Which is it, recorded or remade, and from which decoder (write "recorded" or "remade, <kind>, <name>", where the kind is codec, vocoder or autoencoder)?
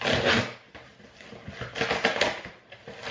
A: recorded